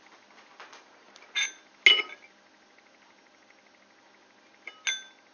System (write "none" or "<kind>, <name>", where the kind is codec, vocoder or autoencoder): none